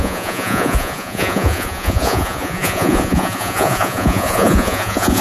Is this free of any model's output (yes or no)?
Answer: no